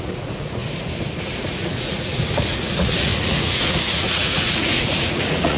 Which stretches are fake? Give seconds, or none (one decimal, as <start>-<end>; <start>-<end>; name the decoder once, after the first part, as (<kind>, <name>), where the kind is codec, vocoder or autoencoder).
0.0-0.6 (vocoder, Vocos); 1.4-5.6